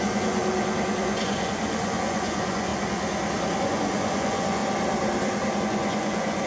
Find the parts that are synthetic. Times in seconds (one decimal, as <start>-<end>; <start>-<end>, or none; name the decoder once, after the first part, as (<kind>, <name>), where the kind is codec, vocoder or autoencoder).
0.0-0.4 (vocoder, Vocos); 0.9-2.7; 3.6-4.6; 5.6-6.5